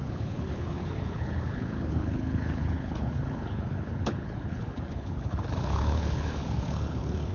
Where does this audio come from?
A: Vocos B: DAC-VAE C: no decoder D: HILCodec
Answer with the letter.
D